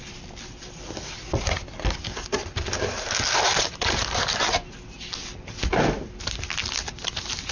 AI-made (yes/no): no